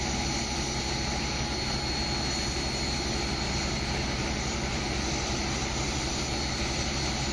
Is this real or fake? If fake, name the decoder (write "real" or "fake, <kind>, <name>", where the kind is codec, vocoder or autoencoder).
real